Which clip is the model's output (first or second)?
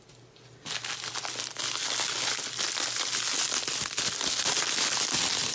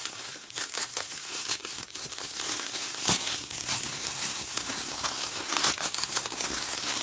second